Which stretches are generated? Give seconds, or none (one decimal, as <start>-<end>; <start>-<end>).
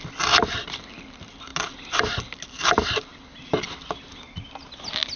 none